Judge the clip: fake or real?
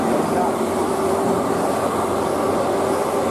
real